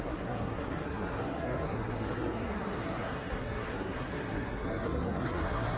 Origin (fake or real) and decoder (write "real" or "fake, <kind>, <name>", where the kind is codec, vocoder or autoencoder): fake, codec, SNAC